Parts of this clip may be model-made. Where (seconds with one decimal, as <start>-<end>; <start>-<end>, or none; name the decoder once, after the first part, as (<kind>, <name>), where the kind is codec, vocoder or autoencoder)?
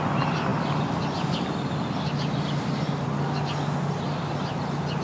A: none